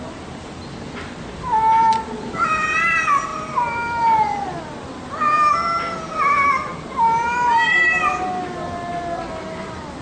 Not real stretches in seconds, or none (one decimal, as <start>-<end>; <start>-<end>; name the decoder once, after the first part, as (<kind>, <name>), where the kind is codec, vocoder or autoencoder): none